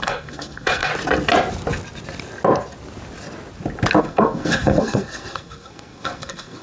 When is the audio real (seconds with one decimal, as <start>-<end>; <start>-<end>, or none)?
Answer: 0.9-4.0